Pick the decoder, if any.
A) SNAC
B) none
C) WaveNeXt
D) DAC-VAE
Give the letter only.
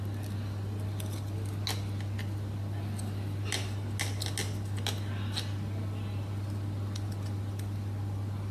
B